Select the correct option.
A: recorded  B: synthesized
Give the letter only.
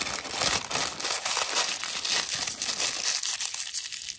A